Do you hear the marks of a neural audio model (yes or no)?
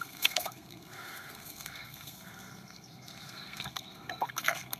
yes